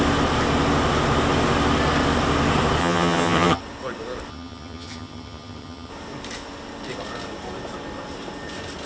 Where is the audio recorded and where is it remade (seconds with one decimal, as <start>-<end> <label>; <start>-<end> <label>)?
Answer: 0.0-2.8 recorded; 2.8-3.6 remade; 3.6-4.3 recorded; 4.3-5.9 remade; 5.9-8.9 recorded